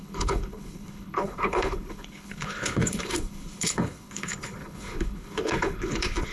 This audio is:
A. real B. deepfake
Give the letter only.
B